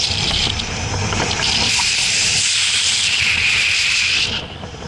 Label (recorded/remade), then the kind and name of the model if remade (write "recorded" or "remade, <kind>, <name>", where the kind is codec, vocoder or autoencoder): remade, vocoder, BigVGAN v2